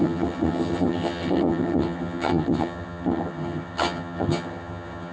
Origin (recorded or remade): remade